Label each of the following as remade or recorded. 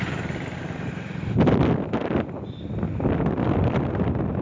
recorded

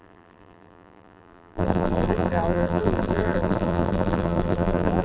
remade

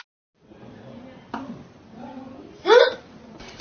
recorded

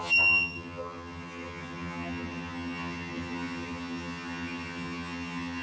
remade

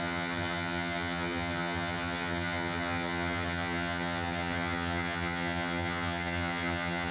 remade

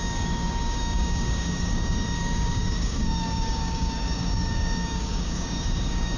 remade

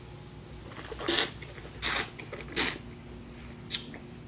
recorded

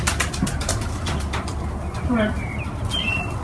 recorded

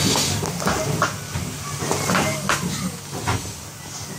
recorded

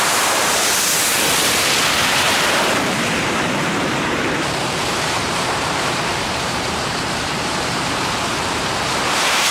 remade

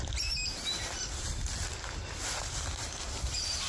recorded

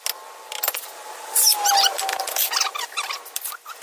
recorded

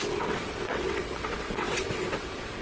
remade